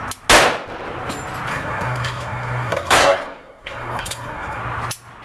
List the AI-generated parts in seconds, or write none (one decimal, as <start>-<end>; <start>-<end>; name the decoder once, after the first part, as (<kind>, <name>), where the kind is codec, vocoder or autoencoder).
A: 1.5-4.6 (codec, SNAC)